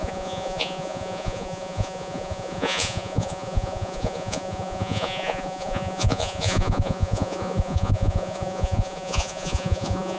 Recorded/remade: remade